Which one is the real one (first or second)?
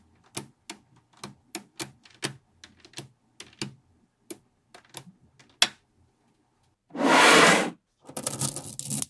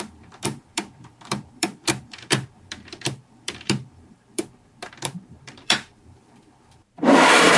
first